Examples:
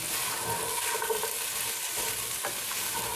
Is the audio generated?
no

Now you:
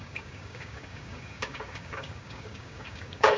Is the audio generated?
yes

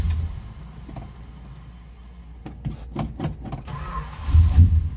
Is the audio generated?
no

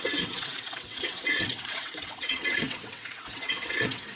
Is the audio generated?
yes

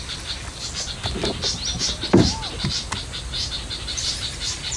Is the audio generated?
no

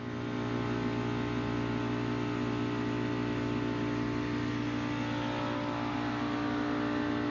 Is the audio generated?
no